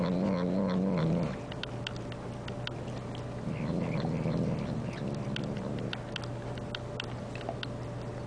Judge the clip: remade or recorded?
recorded